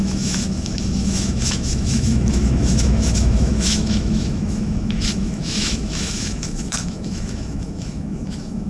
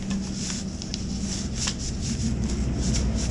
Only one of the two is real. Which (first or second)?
second